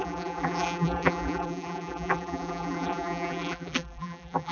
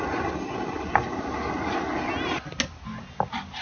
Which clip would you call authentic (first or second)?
second